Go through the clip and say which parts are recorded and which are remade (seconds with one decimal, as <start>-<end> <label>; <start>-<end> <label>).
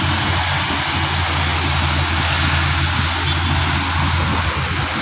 0.0-5.0 recorded